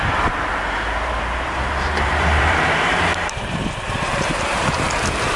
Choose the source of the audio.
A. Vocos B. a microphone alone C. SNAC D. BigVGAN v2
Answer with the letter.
D